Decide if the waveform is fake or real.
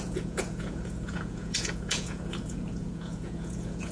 fake